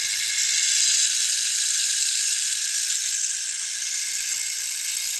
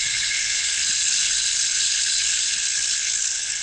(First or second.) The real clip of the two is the first